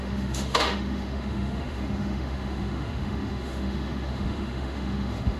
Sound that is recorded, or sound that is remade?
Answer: remade